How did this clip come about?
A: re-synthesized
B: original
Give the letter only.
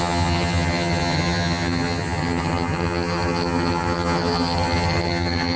A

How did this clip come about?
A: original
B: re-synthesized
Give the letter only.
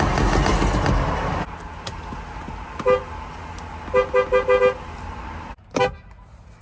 A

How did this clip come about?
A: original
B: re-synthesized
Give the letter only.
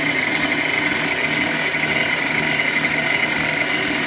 A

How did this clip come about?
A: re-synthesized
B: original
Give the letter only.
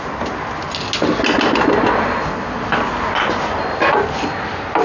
B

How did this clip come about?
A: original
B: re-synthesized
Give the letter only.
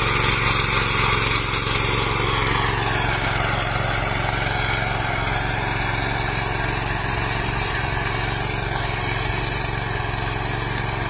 A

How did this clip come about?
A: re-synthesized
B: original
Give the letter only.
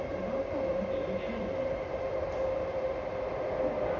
B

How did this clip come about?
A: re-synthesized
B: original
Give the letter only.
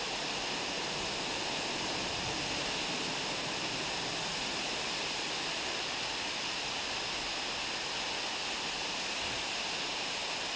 B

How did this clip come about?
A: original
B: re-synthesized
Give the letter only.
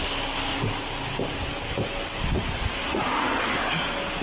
A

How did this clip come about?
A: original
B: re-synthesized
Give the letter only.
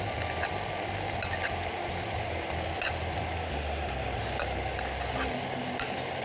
A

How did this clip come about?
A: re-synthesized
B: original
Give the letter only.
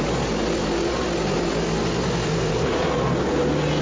B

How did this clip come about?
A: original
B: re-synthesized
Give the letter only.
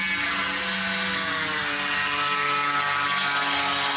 A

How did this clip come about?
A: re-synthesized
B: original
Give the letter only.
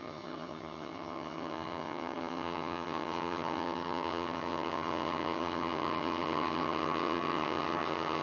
A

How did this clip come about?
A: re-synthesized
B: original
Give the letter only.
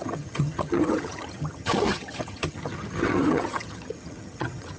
A